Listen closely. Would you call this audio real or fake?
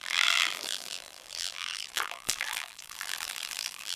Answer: fake